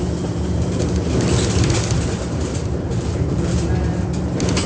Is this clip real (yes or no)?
yes